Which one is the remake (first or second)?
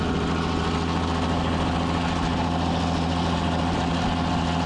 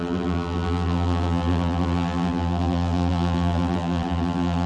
second